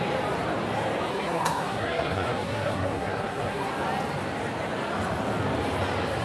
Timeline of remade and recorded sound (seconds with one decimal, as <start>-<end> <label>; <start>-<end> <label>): 0.0-1.1 recorded; 1.1-3.7 remade; 3.7-6.2 recorded